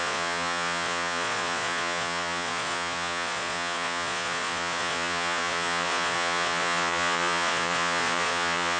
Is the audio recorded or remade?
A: remade